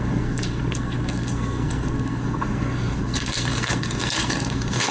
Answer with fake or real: fake